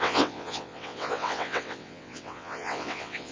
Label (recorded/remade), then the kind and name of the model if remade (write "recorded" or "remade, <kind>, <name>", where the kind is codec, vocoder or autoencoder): remade, vocoder, WaveNeXt